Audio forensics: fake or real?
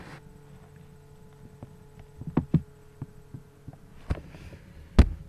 real